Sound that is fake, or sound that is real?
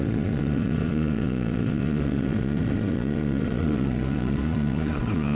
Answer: fake